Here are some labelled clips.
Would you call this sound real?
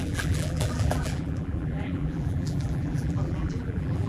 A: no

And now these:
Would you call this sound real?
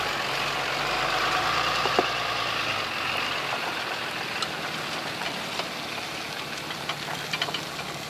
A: yes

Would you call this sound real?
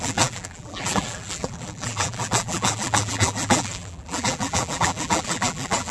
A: no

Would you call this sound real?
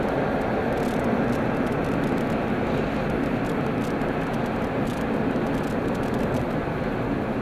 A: yes